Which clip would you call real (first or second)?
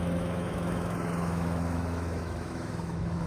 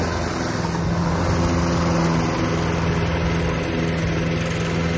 second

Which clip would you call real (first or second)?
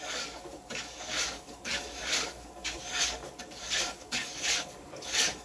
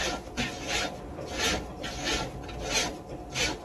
second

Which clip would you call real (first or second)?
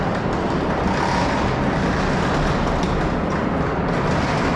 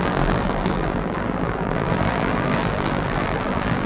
first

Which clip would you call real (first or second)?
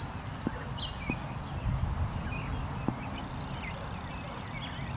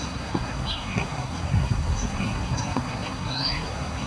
first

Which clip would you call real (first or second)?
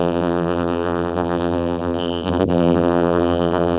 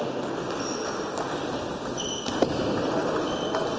second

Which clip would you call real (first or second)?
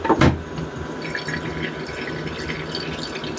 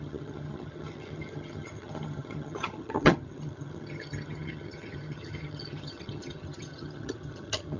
first